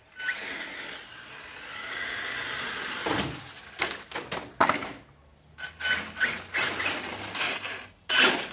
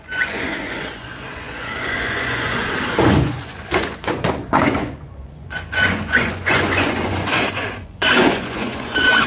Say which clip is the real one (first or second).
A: first